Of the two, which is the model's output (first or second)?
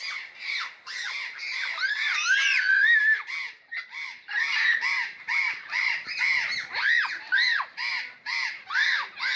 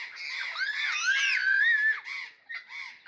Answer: first